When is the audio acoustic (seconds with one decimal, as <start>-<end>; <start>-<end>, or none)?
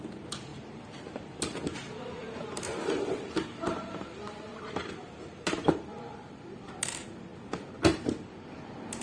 0.0-2.2; 6.7-9.0